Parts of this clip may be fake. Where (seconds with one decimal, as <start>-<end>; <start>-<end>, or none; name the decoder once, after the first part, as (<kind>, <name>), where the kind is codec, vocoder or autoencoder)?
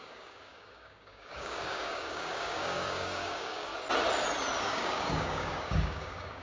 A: 0.0-3.7 (codec, DAC); 4.6-6.4